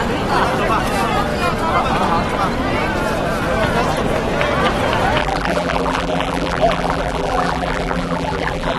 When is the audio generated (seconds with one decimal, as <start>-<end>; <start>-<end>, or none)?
5.2-8.8